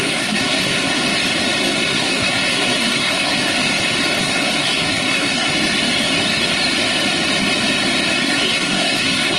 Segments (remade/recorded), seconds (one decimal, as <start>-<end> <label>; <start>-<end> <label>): 0.0-1.0 remade; 1.0-1.6 recorded; 1.6-3.5 remade; 3.5-4.2 recorded; 4.2-5.5 remade; 5.5-8.1 recorded; 8.1-9.4 remade